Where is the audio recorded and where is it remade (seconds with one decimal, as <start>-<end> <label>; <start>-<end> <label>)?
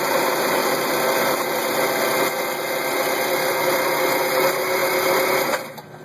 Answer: 0.0-0.6 remade; 0.6-4.2 recorded; 4.2-6.0 remade